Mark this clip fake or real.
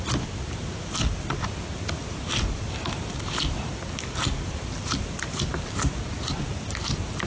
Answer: real